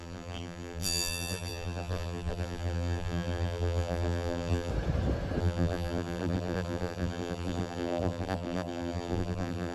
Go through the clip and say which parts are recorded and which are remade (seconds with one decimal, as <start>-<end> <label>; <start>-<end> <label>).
0.0-4.7 remade; 4.7-5.4 recorded; 5.4-9.7 remade